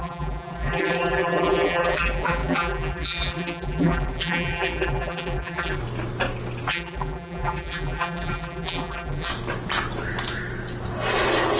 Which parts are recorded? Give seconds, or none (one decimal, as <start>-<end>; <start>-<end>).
5.8-6.7; 9.3-11.6